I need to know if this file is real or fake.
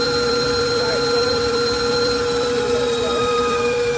fake